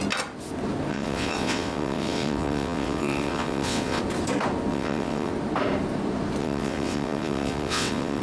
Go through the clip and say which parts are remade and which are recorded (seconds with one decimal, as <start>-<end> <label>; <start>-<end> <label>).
0.0-0.9 recorded; 0.9-4.0 remade; 4.0-4.7 recorded; 4.7-5.3 remade; 5.3-6.4 recorded; 6.4-8.2 remade

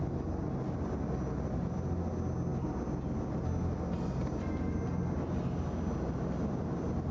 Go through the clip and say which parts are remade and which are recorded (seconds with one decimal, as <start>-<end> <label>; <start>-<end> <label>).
0.0-7.1 recorded

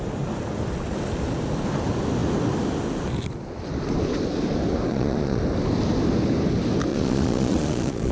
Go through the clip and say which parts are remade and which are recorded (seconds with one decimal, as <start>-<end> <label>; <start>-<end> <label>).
0.0-4.9 recorded; 4.9-5.4 remade; 5.4-6.9 recorded; 6.9-8.1 remade

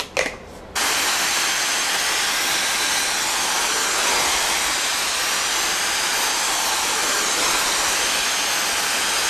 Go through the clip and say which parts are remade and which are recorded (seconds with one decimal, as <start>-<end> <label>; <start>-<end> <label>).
0.0-9.3 recorded

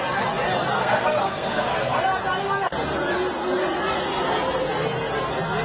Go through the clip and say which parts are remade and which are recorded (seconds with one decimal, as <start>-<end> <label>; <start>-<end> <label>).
0.0-0.8 recorded; 0.8-2.0 remade; 2.0-5.6 recorded